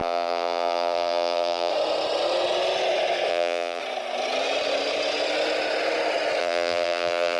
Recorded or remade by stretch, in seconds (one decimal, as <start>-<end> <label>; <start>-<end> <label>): 0.0-1.7 remade; 1.7-3.3 recorded; 3.3-3.8 remade; 3.8-6.4 recorded; 6.4-7.4 remade